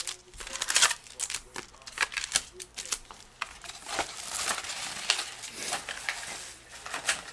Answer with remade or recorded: recorded